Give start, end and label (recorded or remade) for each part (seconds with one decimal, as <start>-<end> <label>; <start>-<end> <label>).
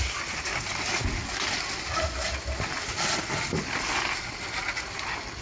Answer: 0.0-5.4 recorded